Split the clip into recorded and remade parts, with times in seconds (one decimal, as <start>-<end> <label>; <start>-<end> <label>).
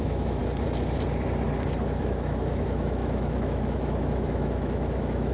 0.0-0.4 remade; 0.4-2.0 recorded; 2.0-5.3 remade